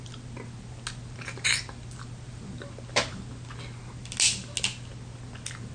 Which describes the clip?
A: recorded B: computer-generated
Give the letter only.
A